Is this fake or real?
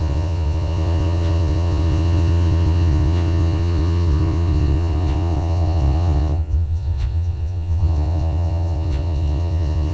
fake